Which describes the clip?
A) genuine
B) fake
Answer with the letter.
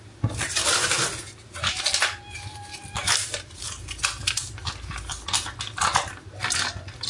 A